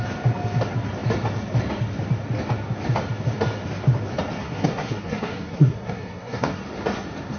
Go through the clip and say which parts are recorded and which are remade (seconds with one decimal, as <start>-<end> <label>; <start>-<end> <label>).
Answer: 0.0-4.4 recorded; 4.4-6.6 remade; 6.6-7.4 recorded